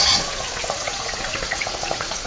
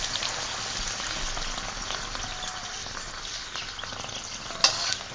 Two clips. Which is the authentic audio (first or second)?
second